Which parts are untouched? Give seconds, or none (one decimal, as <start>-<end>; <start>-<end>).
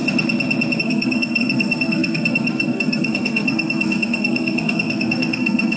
0.0-0.8